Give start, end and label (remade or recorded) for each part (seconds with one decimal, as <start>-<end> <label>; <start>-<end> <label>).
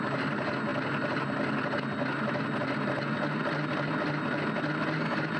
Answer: 0.0-5.4 recorded